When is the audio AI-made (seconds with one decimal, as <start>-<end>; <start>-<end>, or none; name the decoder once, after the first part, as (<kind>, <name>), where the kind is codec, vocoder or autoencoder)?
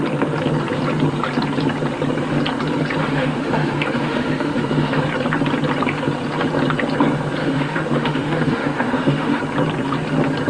3.0-5.0 (autoencoder, DAC-VAE); 7.4-9.4